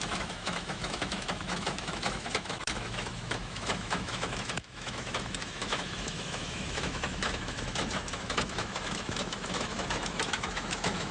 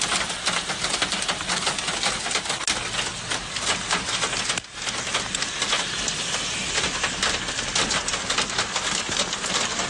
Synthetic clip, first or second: first